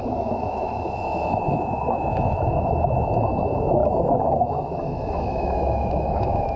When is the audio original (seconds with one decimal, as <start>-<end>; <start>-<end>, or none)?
none